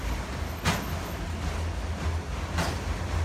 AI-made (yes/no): no